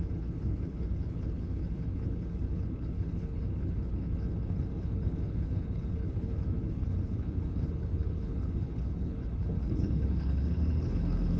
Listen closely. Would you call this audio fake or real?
fake